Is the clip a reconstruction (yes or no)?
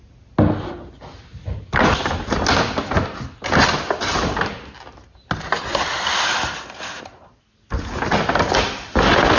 no